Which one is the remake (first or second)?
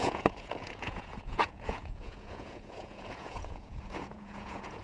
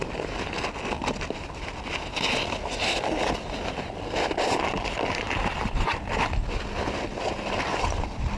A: first